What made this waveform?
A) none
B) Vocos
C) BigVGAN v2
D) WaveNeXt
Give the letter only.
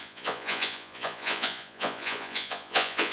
B